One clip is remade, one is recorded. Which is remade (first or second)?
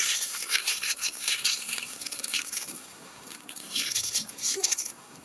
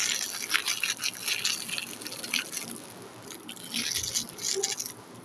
first